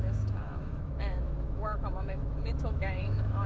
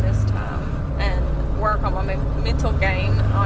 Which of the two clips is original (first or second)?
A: second